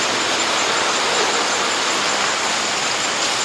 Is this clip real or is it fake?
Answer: real